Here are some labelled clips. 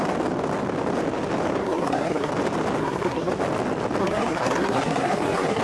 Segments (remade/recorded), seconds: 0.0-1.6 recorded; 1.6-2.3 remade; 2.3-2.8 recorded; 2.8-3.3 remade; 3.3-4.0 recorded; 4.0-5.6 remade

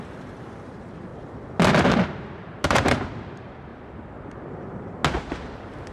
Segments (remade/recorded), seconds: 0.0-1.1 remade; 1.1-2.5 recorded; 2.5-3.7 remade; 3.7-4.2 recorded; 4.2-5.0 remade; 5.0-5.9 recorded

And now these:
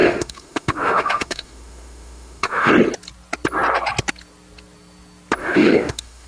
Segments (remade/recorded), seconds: 0.0-2.7 remade; 2.7-5.4 recorded; 5.4-6.3 remade

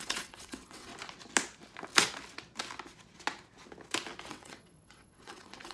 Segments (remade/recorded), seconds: 0.0-0.9 remade; 0.9-4.3 recorded; 4.3-5.7 remade

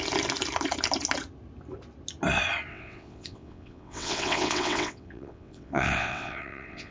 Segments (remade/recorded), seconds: 0.0-2.7 recorded; 2.7-6.9 remade

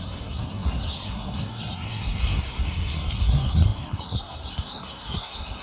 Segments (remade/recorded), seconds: 0.0-5.6 remade